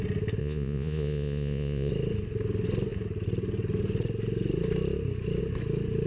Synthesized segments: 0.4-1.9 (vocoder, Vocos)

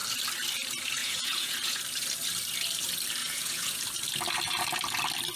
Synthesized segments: 1.0-1.8 (vocoder, Vocos); 3.2-3.8

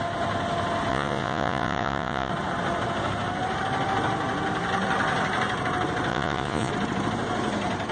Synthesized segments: 0.9-2.3 (vocoder, Vocos); 6.1-6.7

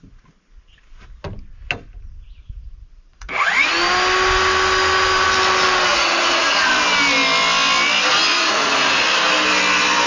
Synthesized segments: 3.1-3.7 (vocoder, Vocos); 5.9-6.7; 8.3-9.0

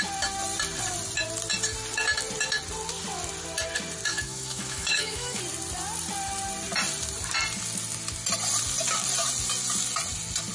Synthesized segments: 4.1-5.4 (autoencoder, DAC-VAE)

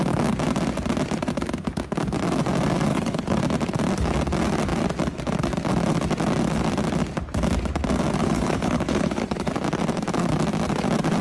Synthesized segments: 2.9-3.4 (codec, HILCodec); 8.2-9.5